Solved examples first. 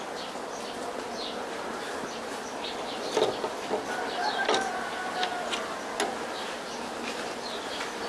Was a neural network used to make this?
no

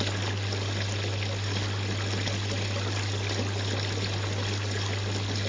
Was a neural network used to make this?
no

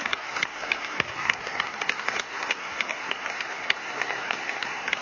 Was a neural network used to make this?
yes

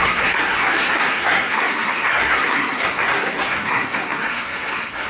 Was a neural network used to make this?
yes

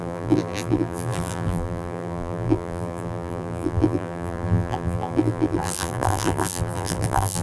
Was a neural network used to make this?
yes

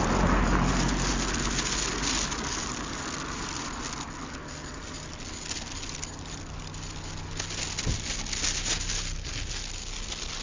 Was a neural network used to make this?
no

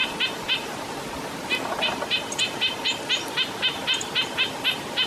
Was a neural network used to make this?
no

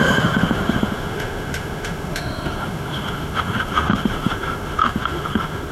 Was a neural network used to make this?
yes